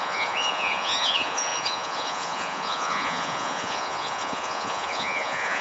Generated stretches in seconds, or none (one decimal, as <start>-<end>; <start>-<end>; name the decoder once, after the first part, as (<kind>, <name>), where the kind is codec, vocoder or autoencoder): 0.0-5.6 (vocoder, Vocos)